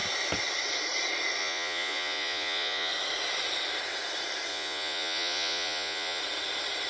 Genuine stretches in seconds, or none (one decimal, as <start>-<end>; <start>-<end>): 0.0-1.4; 2.9-4.5; 6.2-6.9